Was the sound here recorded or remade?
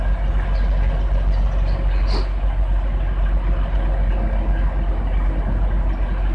recorded